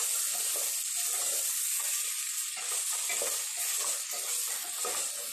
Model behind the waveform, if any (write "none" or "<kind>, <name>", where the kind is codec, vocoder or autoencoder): none